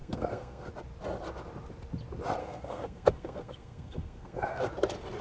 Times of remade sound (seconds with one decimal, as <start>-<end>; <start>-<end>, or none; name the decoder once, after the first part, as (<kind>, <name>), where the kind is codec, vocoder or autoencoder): 0.0-0.7 (codec, SNAC); 2.4-4.7